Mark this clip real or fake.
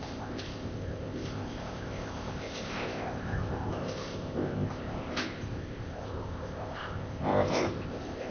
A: fake